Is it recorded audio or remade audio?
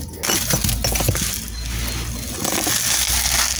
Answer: recorded